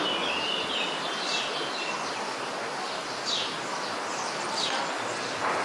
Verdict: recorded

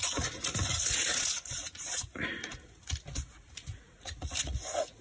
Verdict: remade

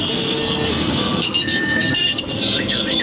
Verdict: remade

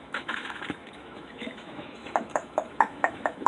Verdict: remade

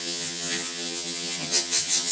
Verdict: remade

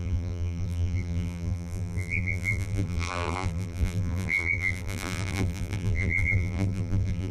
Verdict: remade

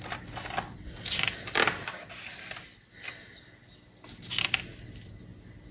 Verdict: recorded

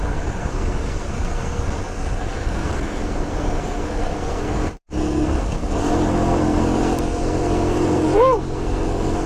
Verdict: remade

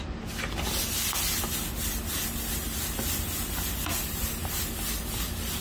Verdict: recorded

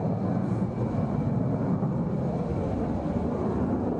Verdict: recorded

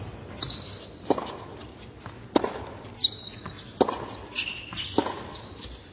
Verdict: recorded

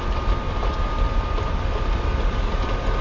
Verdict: recorded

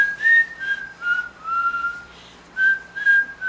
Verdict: recorded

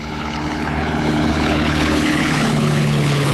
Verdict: remade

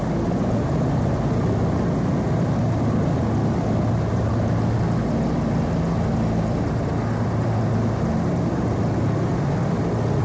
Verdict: recorded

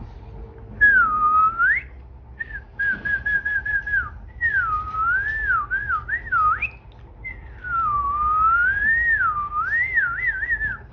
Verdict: recorded